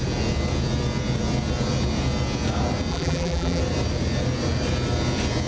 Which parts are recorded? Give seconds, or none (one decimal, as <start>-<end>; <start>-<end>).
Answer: 0.0-2.9; 3.6-5.5